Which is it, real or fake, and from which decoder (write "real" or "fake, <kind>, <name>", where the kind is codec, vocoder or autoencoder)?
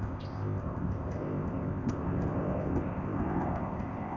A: fake, codec, ZipCodec